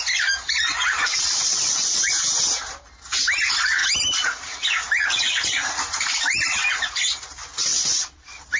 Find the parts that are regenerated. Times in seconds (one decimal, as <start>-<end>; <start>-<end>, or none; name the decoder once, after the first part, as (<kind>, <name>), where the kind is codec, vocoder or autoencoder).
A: 1.1-1.9 (vocoder, WaveNeXt); 7.7-8.6